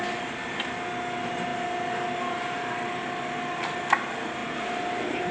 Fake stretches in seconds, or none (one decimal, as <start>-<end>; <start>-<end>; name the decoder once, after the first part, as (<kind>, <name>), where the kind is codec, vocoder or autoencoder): none